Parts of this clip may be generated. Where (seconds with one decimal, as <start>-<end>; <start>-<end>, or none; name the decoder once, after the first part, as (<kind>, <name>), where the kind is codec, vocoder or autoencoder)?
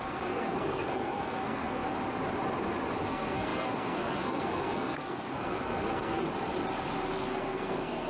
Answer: 0.0-1.8 (codec, SNAC); 3.1-6.2; 7.1-8.1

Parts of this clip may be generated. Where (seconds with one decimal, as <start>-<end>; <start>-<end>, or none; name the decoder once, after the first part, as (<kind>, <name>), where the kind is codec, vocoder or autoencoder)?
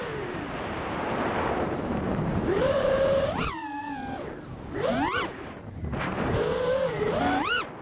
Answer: 0.0-3.8 (vocoder, BigVGAN v2); 4.5-7.2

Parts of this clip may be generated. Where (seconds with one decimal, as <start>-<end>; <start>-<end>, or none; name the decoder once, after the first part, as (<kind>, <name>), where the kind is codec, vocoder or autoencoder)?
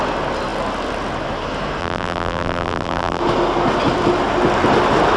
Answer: 1.8-3.2 (vocoder, BigVGAN v2)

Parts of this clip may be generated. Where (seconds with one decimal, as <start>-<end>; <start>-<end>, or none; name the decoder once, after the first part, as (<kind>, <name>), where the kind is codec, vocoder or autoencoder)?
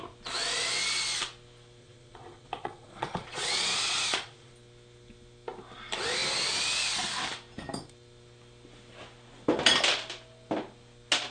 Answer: 1.8-4.5 (vocoder, Vocos)